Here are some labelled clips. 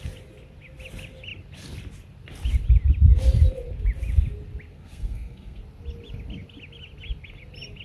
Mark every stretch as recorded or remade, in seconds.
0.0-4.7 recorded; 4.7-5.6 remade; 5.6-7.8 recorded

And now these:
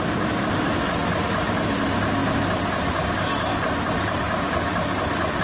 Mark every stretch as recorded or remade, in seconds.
0.0-5.4 recorded

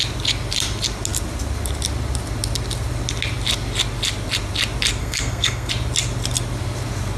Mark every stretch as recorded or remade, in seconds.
0.0-5.0 recorded; 5.0-5.7 remade; 5.7-7.2 recorded

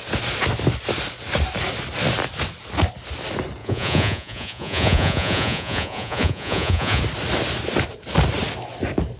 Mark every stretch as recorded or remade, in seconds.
0.0-3.6 recorded; 3.6-7.0 remade; 7.0-9.2 recorded